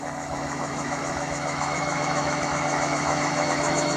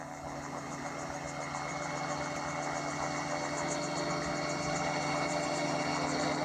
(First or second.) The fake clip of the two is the first